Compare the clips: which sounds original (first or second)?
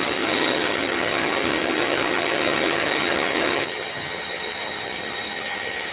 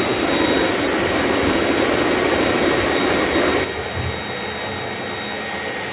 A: second